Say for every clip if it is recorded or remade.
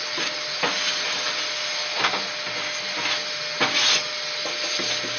recorded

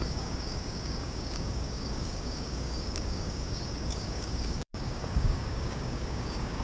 remade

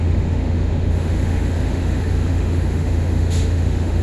remade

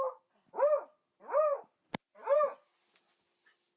recorded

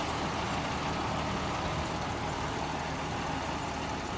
recorded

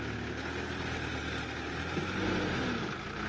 recorded